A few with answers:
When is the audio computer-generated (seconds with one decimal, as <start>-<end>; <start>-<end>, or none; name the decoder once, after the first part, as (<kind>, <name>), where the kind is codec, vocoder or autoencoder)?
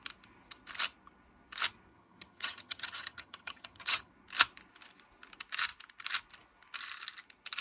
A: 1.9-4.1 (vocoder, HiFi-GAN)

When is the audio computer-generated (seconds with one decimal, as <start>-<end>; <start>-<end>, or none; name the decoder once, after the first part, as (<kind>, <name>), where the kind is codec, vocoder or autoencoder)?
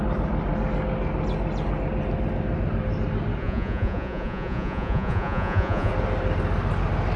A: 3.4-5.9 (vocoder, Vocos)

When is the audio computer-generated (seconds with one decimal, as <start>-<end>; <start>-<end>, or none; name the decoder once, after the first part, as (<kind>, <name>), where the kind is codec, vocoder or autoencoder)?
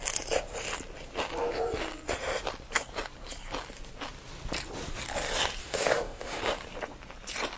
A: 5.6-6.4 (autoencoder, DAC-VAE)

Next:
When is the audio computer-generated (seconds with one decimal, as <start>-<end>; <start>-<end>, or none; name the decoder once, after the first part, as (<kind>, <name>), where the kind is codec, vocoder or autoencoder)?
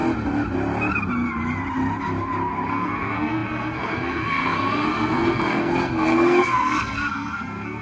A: 2.7-7.8 (codec, SNAC)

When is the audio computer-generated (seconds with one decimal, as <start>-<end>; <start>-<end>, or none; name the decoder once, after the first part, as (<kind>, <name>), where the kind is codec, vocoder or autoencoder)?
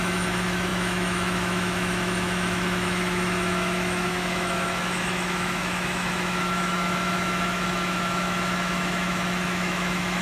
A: 0.0-10.2 (autoencoder, DAC-VAE)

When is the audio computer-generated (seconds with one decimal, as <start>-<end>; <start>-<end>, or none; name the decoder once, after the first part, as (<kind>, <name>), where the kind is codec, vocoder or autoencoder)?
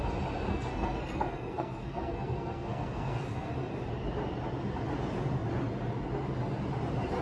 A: 0.5-3.5 (codec, SNAC)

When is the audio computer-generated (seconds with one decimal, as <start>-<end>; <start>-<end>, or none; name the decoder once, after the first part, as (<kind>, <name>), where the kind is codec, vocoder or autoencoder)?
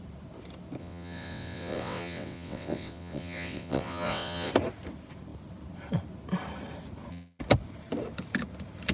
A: 0.8-4.5 (vocoder, WaveNeXt)